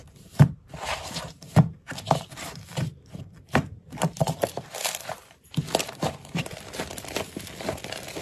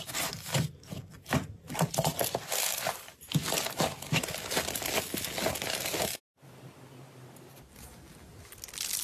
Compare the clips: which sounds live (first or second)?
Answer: second